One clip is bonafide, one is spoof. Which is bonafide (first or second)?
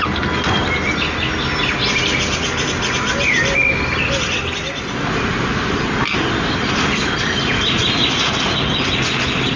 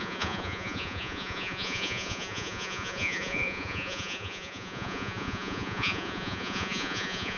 first